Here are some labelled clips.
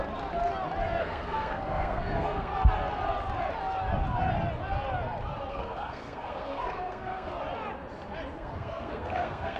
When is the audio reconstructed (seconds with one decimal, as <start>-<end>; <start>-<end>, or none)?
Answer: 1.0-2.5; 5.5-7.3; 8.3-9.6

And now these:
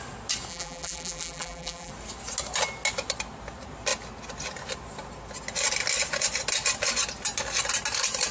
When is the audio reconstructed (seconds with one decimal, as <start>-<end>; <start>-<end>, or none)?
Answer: 0.5-1.9

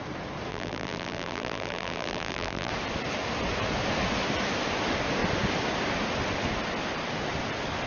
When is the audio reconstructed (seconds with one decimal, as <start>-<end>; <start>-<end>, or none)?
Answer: 0.5-2.7

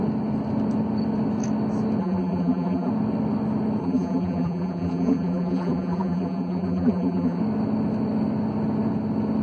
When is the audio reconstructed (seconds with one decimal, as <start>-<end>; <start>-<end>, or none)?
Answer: 2.0-2.9; 3.8-7.4

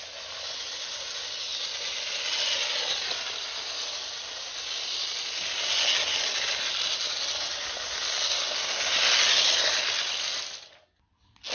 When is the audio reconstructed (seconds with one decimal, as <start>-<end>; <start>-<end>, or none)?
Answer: none